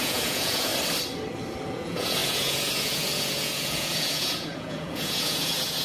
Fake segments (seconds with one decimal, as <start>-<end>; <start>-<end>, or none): 0.0-0.7; 1.7-5.8